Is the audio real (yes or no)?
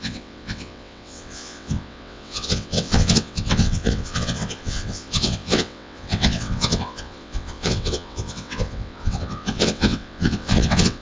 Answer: no